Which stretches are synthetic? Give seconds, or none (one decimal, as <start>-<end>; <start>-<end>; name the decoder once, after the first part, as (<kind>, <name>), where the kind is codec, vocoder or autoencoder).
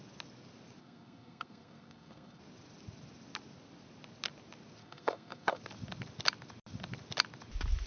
0.8-2.4 (codec, SNAC); 4.8-5.6